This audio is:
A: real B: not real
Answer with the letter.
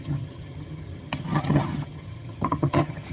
B